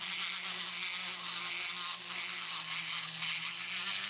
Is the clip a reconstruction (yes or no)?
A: no